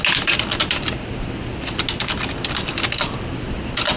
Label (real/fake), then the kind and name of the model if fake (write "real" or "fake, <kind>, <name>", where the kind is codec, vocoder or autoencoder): real